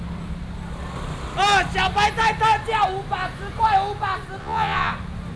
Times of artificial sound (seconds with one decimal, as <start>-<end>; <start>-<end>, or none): 4.4-4.9